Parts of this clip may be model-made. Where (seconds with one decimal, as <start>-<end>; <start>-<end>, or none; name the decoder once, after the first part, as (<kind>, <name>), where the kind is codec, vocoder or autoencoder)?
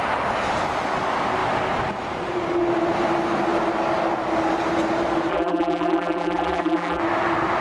5.3-7.0 (vocoder, BigVGAN v2)